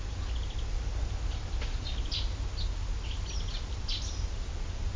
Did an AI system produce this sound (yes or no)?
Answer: no